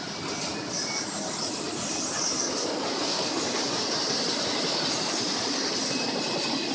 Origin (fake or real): real